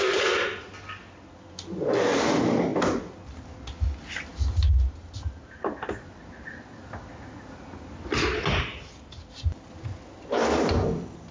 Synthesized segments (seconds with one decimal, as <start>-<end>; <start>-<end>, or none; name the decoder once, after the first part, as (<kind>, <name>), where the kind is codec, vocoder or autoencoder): none